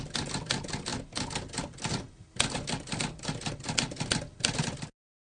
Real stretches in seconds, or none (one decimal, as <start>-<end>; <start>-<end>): 0.0-5.2